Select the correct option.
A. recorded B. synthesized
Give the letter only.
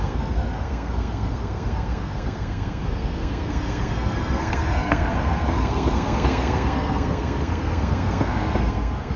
B